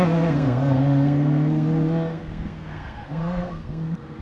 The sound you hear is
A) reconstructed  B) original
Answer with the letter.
A